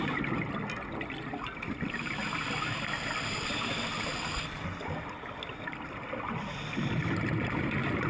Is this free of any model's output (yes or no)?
yes